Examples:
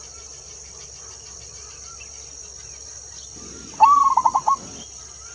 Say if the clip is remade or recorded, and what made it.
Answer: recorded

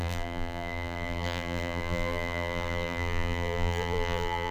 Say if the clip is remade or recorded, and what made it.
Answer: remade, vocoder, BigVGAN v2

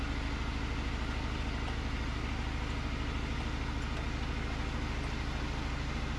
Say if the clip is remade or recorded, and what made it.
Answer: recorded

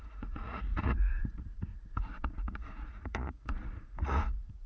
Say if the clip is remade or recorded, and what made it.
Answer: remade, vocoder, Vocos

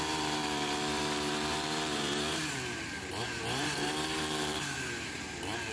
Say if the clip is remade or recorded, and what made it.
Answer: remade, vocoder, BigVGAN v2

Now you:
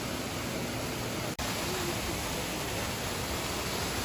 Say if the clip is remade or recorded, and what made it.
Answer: recorded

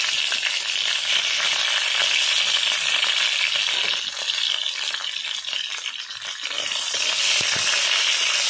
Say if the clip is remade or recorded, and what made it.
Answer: recorded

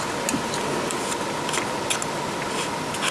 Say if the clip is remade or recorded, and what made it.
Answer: recorded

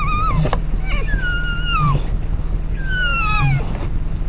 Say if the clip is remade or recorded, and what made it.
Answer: recorded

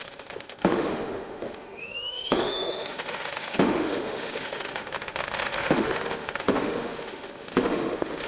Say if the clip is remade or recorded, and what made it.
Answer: remade, autoencoder, DAC-VAE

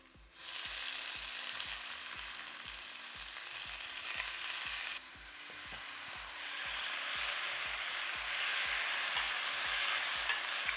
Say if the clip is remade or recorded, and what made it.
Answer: recorded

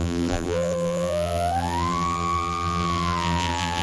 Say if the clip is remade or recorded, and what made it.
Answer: remade, vocoder, BigVGAN v2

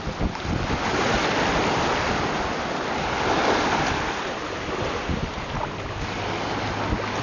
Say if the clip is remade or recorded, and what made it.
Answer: recorded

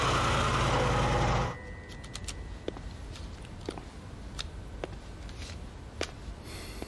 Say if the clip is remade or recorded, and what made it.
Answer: recorded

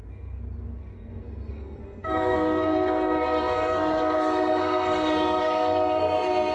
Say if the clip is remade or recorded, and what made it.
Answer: remade, codec, SNAC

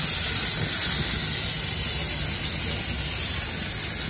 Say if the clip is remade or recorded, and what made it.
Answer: recorded